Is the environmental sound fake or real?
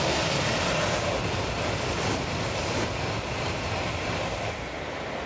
real